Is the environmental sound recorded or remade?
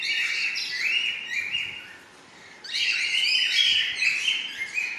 remade